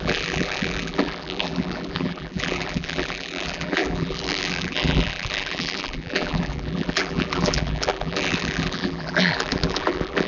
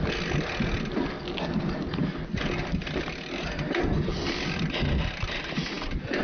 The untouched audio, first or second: second